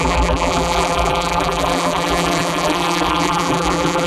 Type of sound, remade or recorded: remade